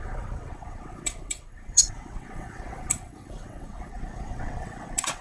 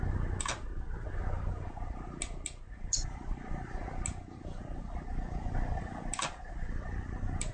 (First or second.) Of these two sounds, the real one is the second